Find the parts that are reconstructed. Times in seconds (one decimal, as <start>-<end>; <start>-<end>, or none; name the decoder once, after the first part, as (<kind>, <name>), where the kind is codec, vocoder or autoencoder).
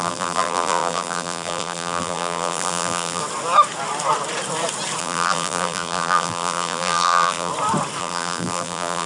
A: 0.0-3.2 (vocoder, BigVGAN v2); 5.0-7.5; 8.0-9.1